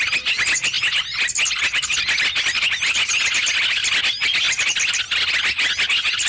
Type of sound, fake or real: real